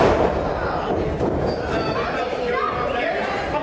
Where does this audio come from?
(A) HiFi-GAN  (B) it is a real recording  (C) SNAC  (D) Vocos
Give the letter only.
B